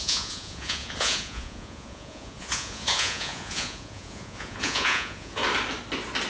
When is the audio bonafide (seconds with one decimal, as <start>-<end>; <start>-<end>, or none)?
5.4-6.3